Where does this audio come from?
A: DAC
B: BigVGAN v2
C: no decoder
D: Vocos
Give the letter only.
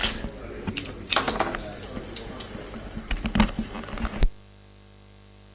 C